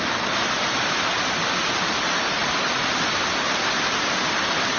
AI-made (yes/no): no